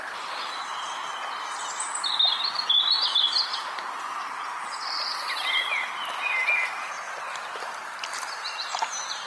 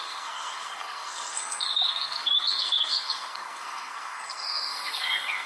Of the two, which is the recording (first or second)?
first